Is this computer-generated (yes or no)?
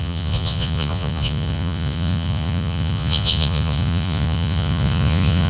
yes